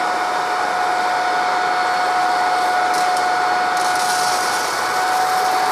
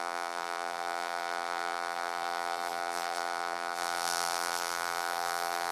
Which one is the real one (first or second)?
first